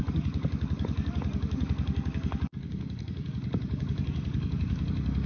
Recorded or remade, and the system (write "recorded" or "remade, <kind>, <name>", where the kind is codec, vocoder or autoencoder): remade, codec, DAC